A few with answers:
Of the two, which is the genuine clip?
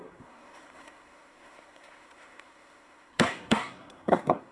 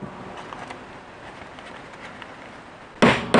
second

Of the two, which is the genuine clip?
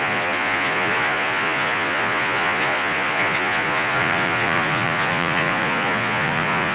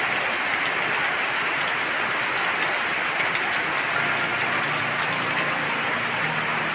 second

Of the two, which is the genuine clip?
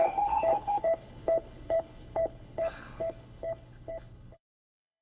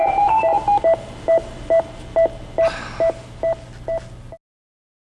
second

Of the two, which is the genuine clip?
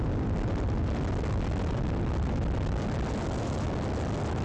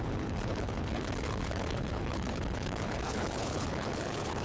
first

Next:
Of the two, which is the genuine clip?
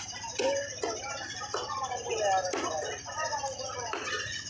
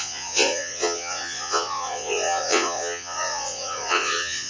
first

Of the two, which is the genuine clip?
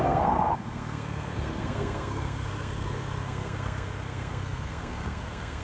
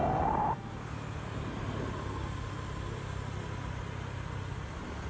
second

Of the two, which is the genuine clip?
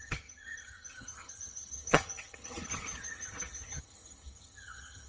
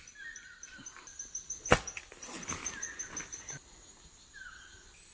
second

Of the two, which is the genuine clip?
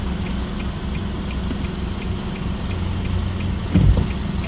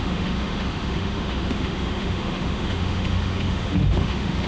first